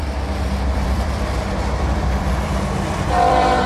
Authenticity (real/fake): fake